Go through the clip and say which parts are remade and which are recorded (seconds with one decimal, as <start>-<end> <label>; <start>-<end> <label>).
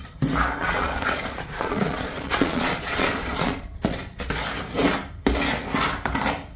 0.0-0.6 recorded; 0.6-4.3 remade; 4.3-6.6 recorded